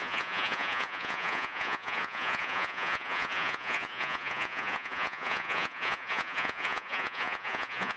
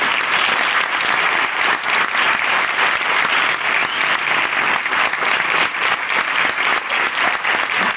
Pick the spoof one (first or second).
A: first